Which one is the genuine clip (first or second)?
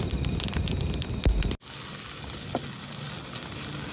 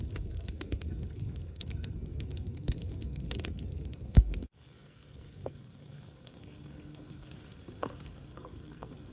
first